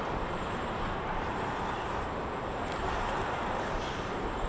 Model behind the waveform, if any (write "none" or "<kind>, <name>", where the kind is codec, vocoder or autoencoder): vocoder, BigVGAN v2